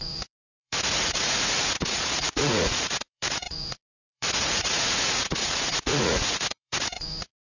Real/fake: fake